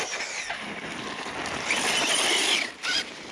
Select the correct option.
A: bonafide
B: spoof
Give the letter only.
A